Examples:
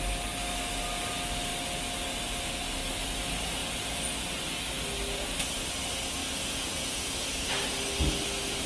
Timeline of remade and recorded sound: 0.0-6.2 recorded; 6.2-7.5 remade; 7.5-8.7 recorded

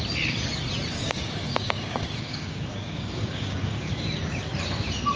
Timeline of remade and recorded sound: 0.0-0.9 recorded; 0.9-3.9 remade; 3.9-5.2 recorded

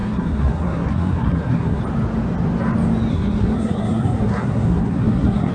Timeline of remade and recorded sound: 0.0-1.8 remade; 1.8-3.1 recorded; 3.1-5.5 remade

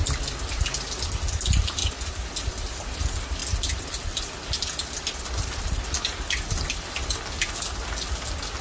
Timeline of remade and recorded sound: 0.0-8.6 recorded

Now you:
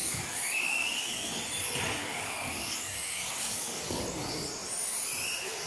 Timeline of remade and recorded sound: 0.0-1.3 remade; 1.3-2.0 recorded; 2.0-3.8 remade; 3.8-5.7 recorded

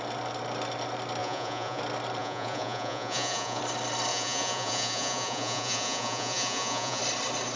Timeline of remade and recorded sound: 0.0-1.2 recorded; 1.2-1.8 remade; 1.8-2.2 recorded; 2.2-3.6 remade; 3.6-4.1 recorded; 4.1-7.0 remade; 7.0-7.6 recorded

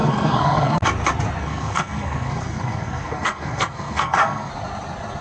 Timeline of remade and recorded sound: 0.0-0.8 remade; 0.8-1.4 recorded; 1.4-4.5 remade; 4.5-5.2 recorded